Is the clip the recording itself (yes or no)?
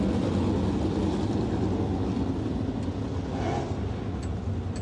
yes